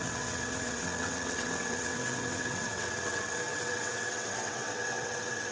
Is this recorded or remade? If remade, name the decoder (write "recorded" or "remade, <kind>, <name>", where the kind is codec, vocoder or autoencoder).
remade, vocoder, WaveNeXt